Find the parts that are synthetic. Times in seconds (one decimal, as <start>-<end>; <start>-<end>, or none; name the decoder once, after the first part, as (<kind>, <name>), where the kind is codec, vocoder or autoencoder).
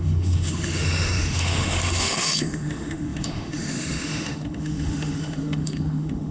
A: 0.0-6.3 (autoencoder, DAC-VAE)